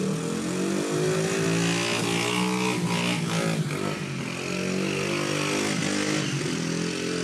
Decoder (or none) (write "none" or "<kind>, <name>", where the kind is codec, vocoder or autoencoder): none